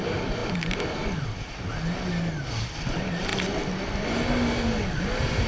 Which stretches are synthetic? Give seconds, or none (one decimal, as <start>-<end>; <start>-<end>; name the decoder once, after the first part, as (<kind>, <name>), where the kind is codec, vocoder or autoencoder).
none